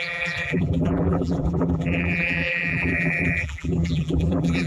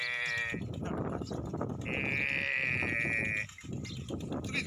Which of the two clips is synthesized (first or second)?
first